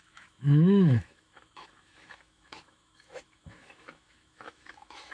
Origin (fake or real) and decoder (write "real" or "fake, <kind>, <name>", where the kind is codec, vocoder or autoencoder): fake, autoencoder, DAC-VAE